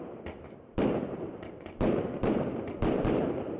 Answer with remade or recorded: remade